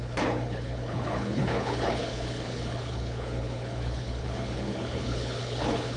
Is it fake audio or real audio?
fake